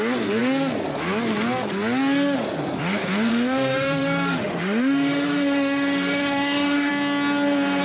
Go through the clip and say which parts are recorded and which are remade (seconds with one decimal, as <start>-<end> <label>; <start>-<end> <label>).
0.0-3.3 recorded; 3.3-6.9 remade; 6.9-7.8 recorded

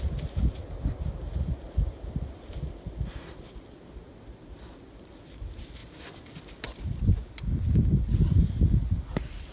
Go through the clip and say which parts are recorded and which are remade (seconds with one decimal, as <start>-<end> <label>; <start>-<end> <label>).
0.0-9.5 recorded